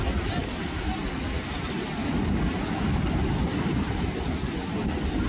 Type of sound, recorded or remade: recorded